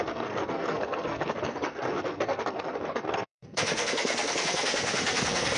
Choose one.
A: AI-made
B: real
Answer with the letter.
A